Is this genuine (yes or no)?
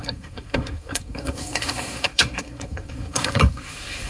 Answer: no